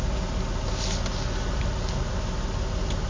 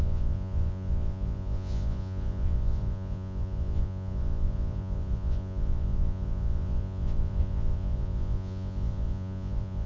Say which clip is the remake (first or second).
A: second